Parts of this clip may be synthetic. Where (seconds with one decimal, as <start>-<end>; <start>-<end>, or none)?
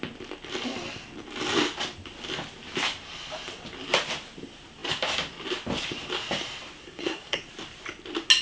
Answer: 6.8-7.4